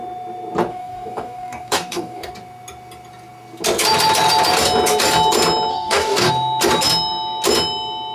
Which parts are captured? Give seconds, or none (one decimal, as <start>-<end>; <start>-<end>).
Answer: 0.0-0.7; 2.3-5.7; 6.3-8.1